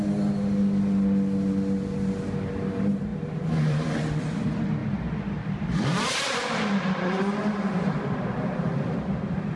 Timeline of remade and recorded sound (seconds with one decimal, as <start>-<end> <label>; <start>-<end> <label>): 0.0-3.1 recorded; 3.1-3.9 remade; 3.9-4.8 recorded; 4.8-9.6 remade